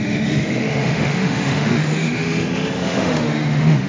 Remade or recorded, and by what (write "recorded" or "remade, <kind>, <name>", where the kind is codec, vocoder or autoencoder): remade, autoencoder, DAC-VAE